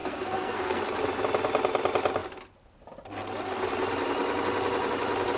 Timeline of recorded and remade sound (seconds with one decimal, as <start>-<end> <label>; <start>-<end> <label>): 0.0-0.8 remade; 0.8-5.4 recorded